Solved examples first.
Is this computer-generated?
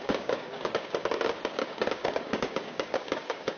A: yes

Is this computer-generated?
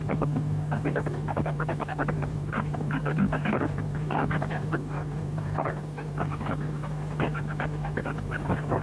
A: yes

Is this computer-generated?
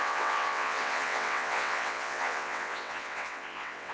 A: yes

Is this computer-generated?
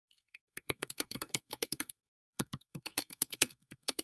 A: yes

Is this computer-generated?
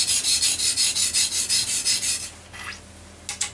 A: no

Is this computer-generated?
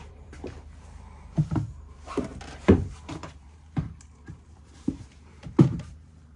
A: yes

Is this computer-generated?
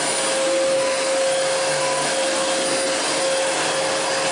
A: no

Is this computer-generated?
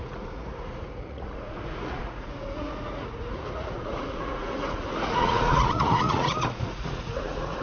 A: yes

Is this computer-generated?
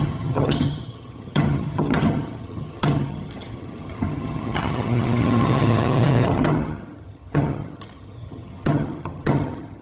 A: yes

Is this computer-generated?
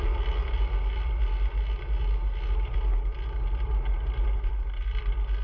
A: no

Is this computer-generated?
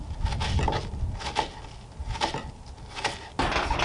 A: no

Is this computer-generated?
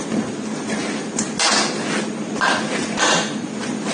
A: no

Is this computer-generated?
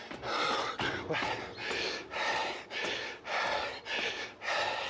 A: no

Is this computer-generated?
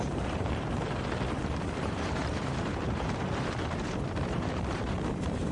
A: yes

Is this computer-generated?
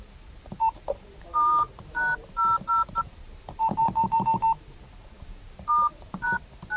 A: yes